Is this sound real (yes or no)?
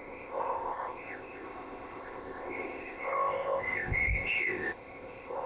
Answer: no